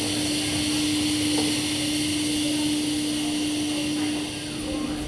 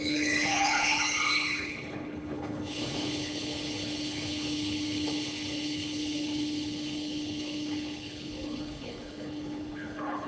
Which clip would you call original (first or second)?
first